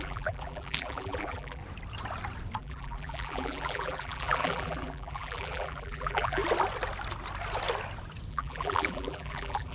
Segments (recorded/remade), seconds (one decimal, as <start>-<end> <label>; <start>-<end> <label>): 0.0-1.6 remade; 1.6-2.6 recorded; 2.6-6.4 remade; 6.4-8.3 recorded; 8.3-9.7 remade